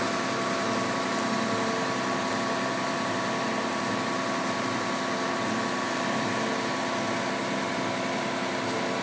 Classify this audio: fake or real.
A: real